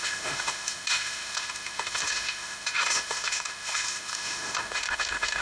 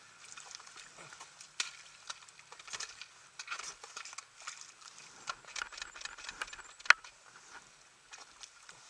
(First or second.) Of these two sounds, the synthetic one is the first